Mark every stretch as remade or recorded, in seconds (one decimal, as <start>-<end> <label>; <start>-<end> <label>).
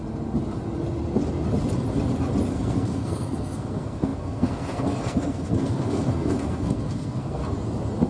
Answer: 0.0-2.5 recorded; 2.5-7.4 remade; 7.4-8.1 recorded